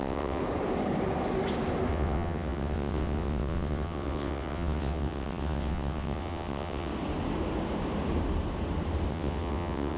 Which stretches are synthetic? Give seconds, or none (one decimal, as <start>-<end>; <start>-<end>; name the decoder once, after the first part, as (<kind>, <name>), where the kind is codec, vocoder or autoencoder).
0.0-0.4 (vocoder, WaveNeXt); 1.9-6.9; 9.1-10.0